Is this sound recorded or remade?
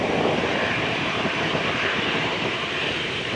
remade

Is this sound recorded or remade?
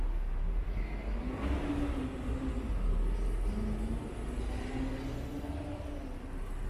recorded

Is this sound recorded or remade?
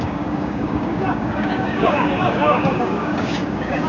remade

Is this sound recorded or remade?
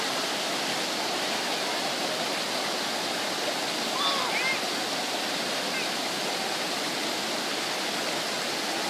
recorded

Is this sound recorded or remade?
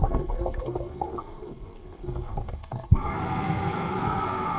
remade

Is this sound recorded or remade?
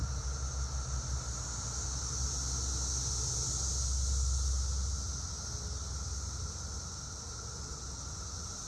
recorded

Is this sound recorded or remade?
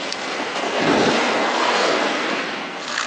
remade